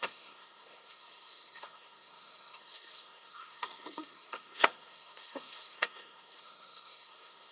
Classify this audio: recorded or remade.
remade